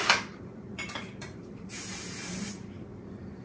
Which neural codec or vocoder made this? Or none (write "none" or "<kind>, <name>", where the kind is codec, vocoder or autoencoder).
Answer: vocoder, BigVGAN v2